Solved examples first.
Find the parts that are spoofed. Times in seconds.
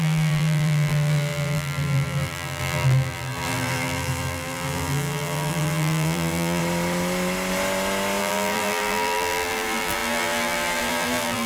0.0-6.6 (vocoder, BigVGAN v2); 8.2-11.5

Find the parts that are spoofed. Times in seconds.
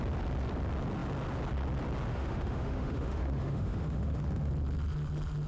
2.1-4.5 (autoencoder, DAC-VAE)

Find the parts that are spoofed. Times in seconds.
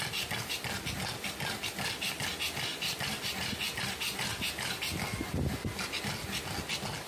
none